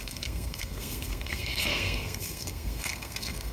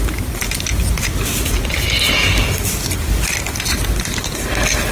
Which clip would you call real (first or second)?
second